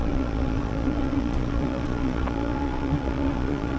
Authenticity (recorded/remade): remade